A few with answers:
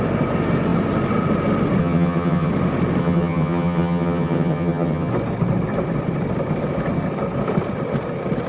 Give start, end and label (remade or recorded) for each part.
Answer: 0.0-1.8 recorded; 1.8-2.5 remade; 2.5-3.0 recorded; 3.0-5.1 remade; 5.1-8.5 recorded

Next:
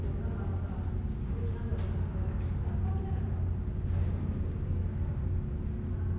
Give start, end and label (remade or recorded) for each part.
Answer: 0.0-6.2 recorded

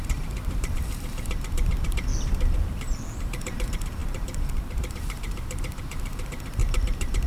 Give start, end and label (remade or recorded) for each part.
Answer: 0.0-2.1 remade; 2.1-3.2 recorded; 3.2-6.6 remade; 6.6-7.3 recorded

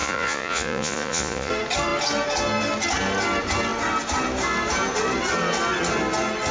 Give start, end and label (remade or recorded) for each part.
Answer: 0.0-1.5 remade; 1.5-6.5 recorded

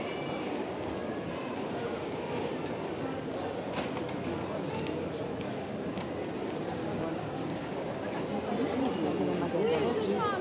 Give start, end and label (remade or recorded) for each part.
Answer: 0.0-1.8 recorded; 1.8-2.5 remade; 2.5-6.8 recorded; 6.8-7.9 remade; 7.9-10.4 recorded

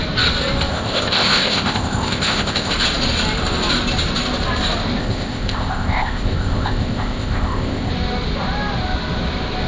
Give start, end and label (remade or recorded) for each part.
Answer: 0.0-0.7 recorded; 0.7-2.7 remade; 2.7-5.0 recorded; 5.0-7.9 remade; 7.9-9.7 recorded

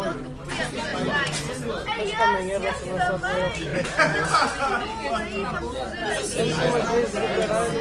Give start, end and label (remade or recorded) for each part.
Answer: 0.0-7.8 recorded